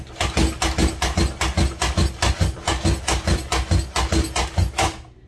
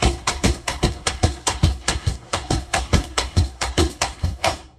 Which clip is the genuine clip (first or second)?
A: first